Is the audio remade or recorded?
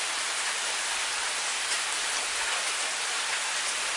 recorded